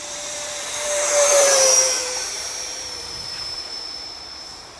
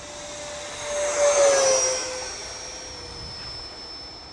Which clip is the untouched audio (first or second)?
second